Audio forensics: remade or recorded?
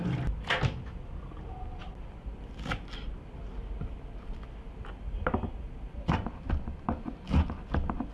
recorded